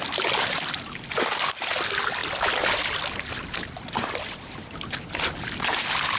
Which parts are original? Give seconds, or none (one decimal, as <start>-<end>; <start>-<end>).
0.0-2.2; 4.6-6.2